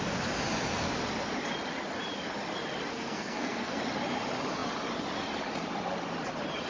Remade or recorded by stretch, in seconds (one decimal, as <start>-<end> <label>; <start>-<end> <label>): 0.0-2.9 recorded; 2.9-3.8 remade; 3.8-6.7 recorded